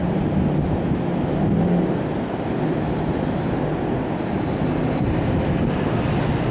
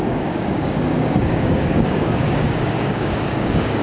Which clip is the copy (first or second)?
second